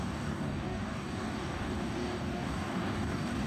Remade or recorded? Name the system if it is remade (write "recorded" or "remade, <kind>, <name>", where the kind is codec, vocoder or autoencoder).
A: remade, codec, DAC